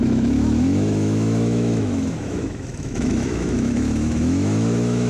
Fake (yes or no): yes